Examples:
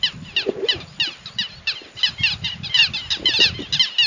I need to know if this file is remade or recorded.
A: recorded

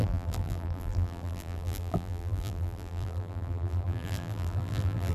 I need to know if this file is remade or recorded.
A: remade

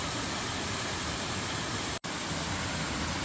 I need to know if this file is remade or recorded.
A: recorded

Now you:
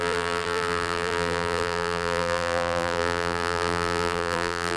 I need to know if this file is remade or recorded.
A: remade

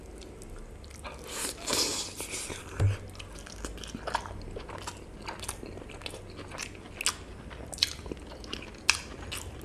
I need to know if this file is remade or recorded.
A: recorded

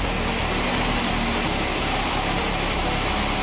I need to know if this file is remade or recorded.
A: recorded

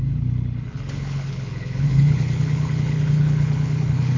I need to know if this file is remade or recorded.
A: remade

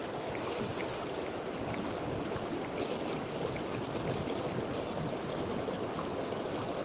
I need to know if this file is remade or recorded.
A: recorded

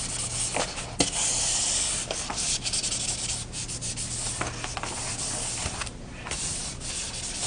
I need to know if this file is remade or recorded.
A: recorded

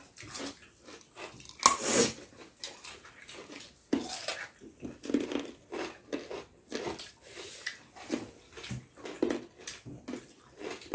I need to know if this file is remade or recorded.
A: recorded